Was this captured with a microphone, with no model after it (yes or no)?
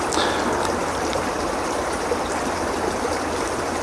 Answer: yes